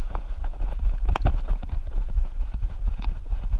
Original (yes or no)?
no